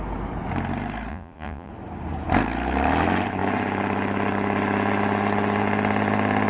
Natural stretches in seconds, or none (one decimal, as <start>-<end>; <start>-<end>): 0.0-1.1; 1.7-6.5